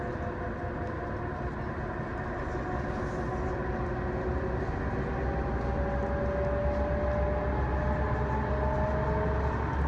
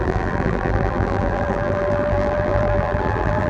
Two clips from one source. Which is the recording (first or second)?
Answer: first